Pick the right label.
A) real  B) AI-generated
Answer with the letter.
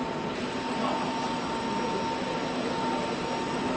A